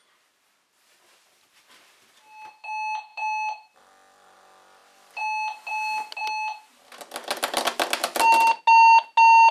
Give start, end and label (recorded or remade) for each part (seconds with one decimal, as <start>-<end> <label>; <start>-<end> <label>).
0.0-3.1 recorded; 3.1-3.8 remade; 3.8-9.5 recorded